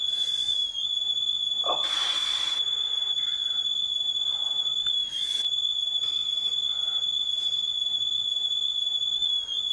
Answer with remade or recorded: recorded